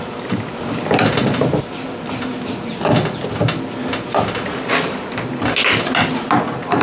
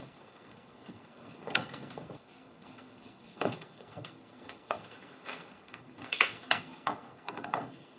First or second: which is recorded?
first